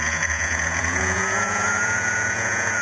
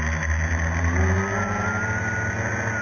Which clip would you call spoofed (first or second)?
first